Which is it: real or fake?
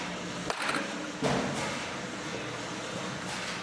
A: real